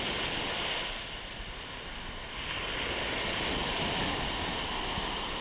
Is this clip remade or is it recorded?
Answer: recorded